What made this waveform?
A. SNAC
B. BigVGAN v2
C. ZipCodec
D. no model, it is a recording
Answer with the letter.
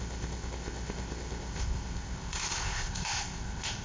C